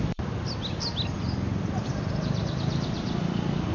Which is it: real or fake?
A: real